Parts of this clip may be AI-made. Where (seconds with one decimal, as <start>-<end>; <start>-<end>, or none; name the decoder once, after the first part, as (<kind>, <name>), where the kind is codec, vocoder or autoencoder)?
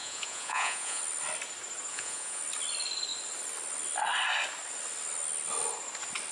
0.0-1.0 (vocoder, Vocos); 1.9-2.4